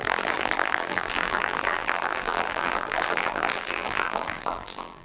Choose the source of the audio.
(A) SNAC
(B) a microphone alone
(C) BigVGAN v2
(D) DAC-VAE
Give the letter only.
C